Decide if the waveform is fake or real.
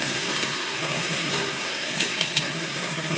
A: fake